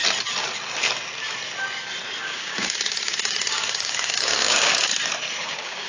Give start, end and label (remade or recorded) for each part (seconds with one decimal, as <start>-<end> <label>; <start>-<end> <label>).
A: 0.0-2.2 recorded; 2.2-4.9 remade; 4.9-5.4 recorded; 5.4-5.9 remade